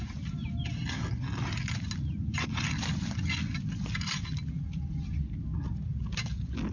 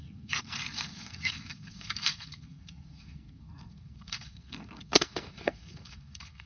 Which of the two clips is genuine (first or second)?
first